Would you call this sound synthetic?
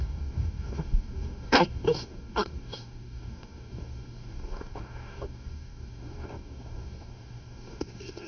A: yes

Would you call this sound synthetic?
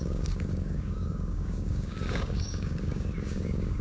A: yes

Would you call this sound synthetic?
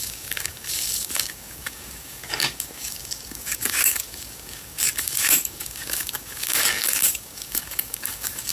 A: yes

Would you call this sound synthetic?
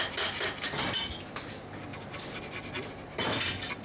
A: no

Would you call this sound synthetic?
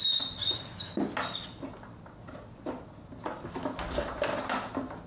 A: no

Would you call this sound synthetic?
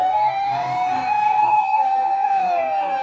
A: yes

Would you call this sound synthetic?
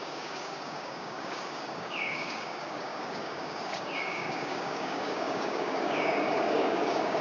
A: yes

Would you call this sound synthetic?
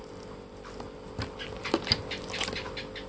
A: no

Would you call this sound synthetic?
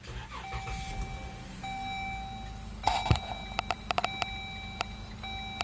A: no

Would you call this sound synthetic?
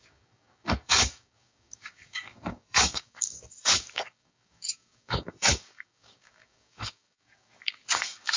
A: yes